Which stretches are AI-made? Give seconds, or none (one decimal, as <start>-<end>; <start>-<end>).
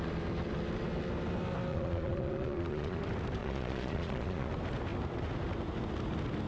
1.7-3.0; 3.4-4.5